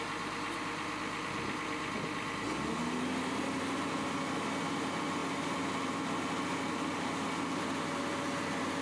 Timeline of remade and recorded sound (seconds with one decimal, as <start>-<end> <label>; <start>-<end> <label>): 0.0-8.8 recorded